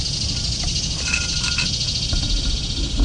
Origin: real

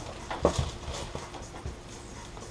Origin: real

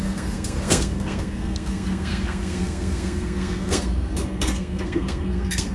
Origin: fake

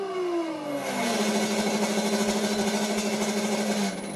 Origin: real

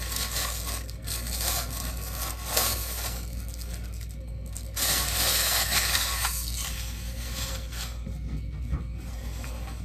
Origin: fake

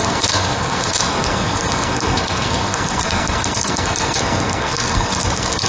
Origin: fake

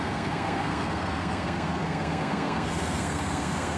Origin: fake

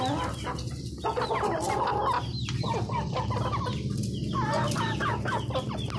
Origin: real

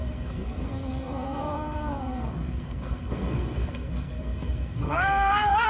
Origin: fake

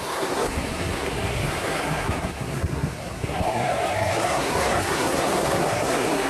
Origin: fake